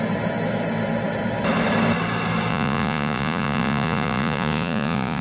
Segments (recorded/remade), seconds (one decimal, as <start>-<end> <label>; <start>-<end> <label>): 0.0-2.5 recorded; 2.5-5.2 remade